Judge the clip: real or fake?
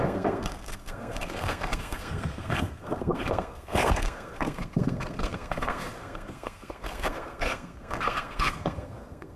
fake